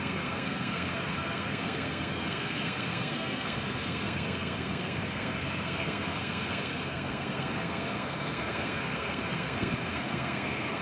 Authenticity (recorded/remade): remade